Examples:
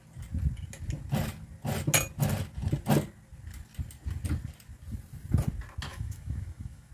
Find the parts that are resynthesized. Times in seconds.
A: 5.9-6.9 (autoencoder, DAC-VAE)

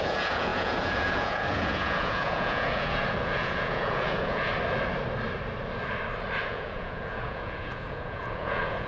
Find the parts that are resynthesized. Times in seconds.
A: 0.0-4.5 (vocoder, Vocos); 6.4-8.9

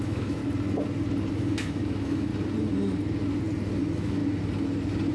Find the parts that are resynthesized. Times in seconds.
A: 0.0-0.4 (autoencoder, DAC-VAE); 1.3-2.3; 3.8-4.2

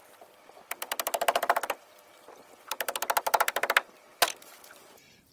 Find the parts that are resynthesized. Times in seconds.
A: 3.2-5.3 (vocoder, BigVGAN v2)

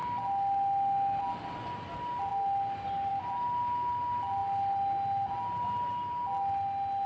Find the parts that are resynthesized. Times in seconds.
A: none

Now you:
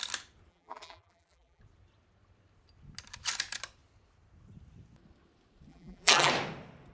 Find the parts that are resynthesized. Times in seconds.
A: 0.5-1.6 (vocoder, BigVGAN v2); 5.7-6.3

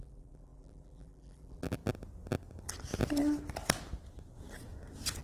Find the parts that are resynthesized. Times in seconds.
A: 0.0-1.8 (vocoder, BigVGAN v2)